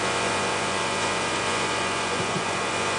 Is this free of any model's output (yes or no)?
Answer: no